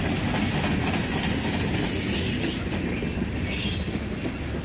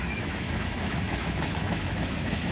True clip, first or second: first